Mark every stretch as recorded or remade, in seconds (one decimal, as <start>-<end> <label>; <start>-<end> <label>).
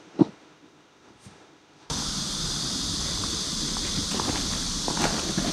0.0-2.0 remade; 2.0-5.5 recorded